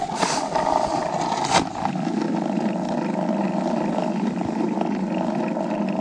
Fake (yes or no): no